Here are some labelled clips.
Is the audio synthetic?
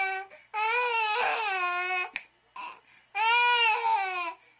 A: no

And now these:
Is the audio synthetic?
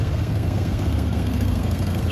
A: yes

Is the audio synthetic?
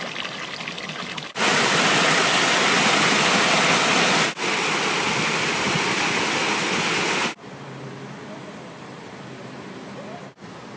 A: no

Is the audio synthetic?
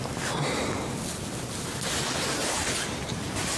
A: no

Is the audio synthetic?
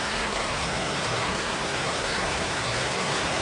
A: yes